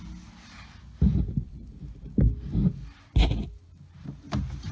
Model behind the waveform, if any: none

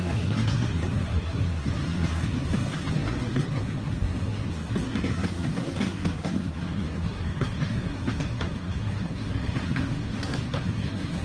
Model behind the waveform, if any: codec, SNAC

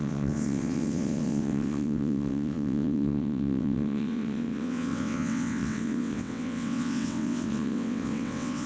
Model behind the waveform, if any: vocoder, WaveNeXt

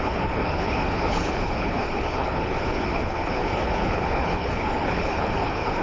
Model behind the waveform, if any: codec, HILCodec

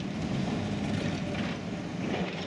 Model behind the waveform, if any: none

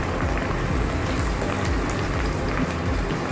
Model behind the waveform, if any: none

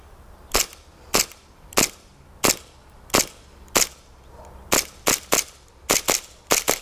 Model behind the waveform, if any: none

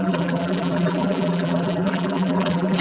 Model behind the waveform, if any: vocoder, BigVGAN v2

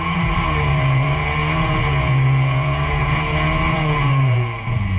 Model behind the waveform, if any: vocoder, Vocos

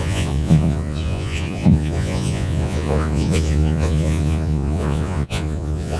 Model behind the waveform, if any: vocoder, Vocos